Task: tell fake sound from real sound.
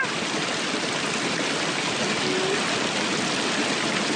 real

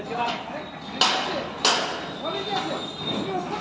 real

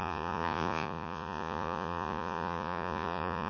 fake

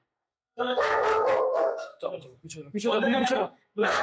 fake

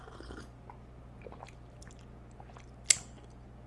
real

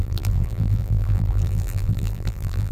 fake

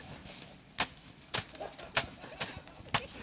real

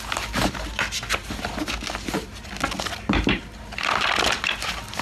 real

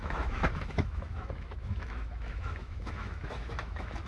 fake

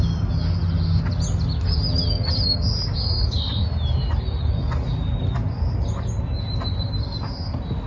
real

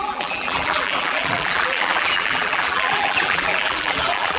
fake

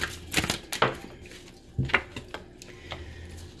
real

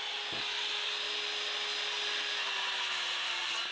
real